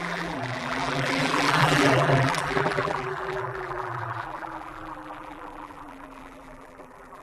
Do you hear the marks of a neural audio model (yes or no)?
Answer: yes